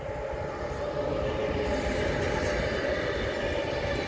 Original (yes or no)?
yes